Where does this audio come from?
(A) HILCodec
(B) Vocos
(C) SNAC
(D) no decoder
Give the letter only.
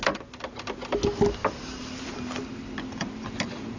D